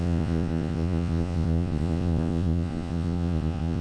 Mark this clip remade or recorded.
remade